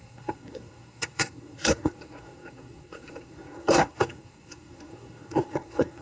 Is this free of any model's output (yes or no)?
no